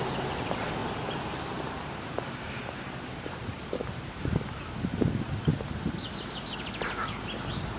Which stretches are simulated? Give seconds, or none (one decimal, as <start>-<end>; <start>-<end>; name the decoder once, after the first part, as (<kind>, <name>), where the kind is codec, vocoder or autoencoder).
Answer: 0.8-2.2 (vocoder, BigVGAN v2); 5.5-6.6